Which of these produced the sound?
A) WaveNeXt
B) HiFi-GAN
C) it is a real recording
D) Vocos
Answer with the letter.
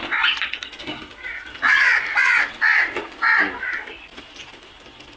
C